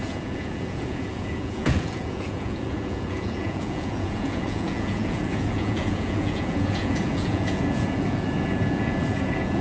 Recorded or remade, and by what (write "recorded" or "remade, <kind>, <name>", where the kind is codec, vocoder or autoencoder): remade, vocoder, Vocos